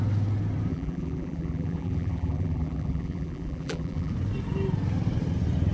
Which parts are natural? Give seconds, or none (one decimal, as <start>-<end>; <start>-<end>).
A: 0.0-0.7; 4.1-5.7